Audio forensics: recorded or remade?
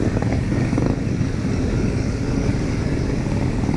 remade